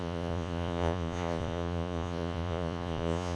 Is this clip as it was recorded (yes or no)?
no